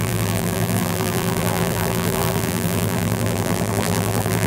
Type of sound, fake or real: fake